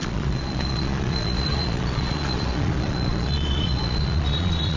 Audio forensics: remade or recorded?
remade